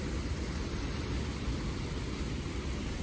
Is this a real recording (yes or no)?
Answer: yes